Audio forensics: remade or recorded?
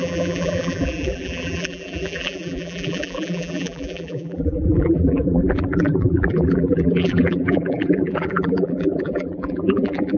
remade